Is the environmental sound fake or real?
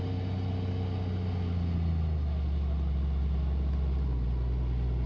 real